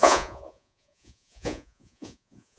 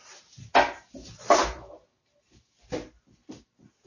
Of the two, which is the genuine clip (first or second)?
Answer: second